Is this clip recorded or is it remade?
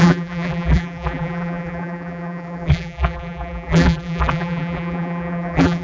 remade